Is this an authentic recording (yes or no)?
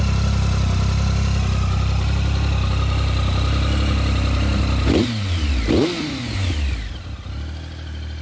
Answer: yes